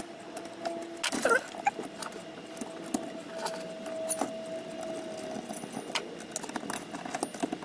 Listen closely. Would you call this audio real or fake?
real